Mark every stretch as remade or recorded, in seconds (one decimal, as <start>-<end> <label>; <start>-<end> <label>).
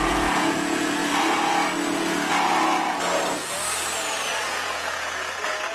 0.0-1.0 remade; 1.0-4.4 recorded; 4.4-5.7 remade